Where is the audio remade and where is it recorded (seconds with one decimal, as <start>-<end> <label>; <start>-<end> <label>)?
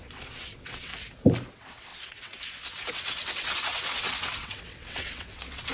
0.0-0.9 remade; 0.9-1.5 recorded; 1.5-5.7 remade